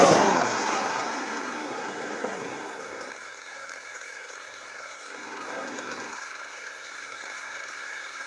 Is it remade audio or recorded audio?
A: remade